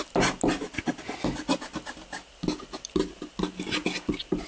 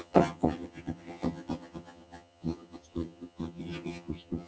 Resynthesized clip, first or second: second